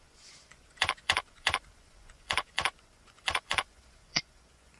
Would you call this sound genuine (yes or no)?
no